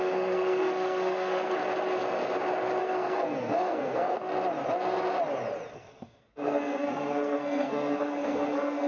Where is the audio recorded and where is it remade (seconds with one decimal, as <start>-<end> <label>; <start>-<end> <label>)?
0.0-1.6 remade; 1.6-2.8 recorded; 2.8-4.2 remade; 4.2-5.7 recorded; 5.7-8.9 remade